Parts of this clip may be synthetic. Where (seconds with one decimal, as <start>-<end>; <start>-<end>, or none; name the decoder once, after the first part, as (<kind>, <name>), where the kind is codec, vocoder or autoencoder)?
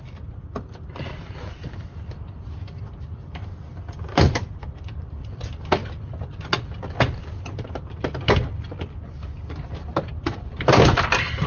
0.0-5.8 (vocoder, BigVGAN v2); 10.2-11.5